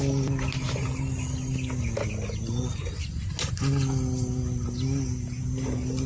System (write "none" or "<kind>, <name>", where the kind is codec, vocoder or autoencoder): none